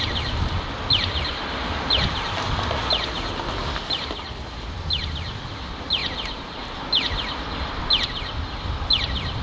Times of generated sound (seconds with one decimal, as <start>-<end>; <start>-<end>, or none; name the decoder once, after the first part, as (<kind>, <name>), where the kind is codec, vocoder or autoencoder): none